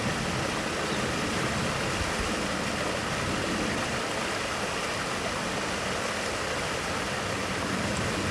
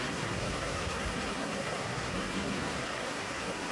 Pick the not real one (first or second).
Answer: second